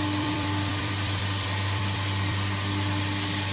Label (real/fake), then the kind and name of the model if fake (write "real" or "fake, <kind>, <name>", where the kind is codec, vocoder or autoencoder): fake, vocoder, BigVGAN v2